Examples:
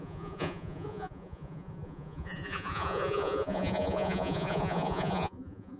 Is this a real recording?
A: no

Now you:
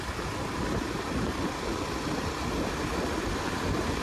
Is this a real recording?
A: yes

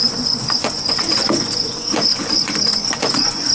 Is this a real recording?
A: no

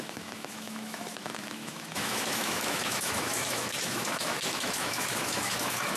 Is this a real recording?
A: no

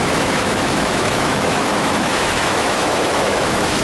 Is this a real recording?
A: no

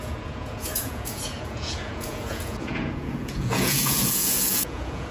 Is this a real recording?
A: no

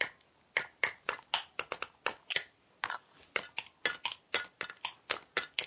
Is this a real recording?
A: yes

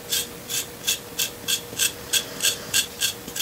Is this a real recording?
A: yes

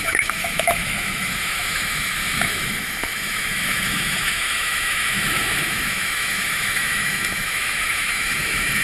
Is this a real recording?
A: no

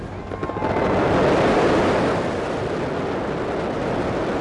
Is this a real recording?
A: yes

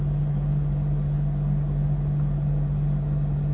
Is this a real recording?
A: yes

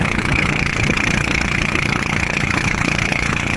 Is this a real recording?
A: no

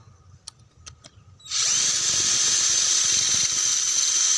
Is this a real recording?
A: yes